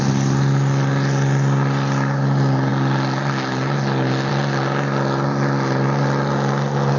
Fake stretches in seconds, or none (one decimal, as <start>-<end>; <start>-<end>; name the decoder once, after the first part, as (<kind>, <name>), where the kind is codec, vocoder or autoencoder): none